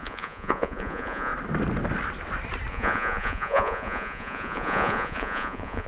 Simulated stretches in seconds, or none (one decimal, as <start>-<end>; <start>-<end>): 0.0-1.3; 2.7-5.9